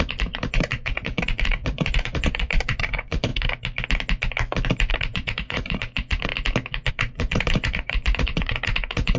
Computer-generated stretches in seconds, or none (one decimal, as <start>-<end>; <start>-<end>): 0.0-3.3; 4.9-6.3; 6.9-9.2